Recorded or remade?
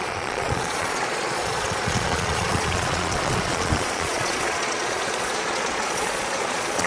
remade